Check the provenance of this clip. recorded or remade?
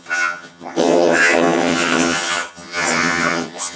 remade